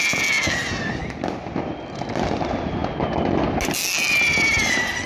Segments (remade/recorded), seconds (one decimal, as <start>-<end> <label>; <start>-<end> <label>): 0.0-5.1 recorded